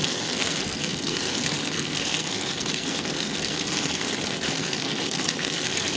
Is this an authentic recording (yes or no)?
no